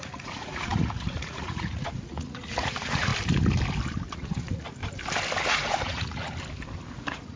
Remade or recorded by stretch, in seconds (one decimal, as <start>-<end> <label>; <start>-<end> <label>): 0.0-3.1 remade; 3.1-4.1 recorded; 4.1-4.8 remade; 4.8-5.4 recorded; 5.4-6.3 remade; 6.3-6.9 recorded; 6.9-7.4 remade